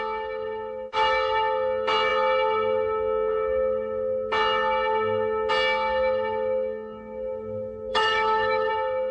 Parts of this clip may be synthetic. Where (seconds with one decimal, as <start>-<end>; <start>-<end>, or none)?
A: 7.9-8.7